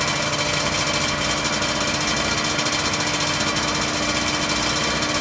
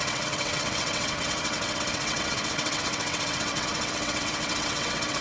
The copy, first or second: second